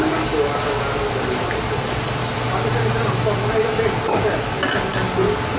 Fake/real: real